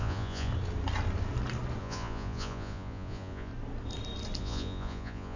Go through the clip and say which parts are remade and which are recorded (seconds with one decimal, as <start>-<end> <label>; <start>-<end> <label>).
0.0-0.5 remade; 0.5-1.8 recorded; 1.8-3.5 remade; 3.5-4.4 recorded; 4.4-5.4 remade